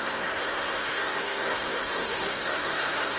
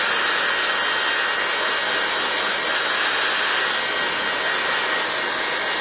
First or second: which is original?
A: second